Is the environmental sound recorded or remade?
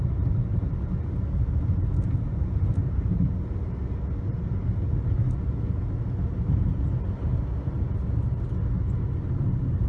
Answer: recorded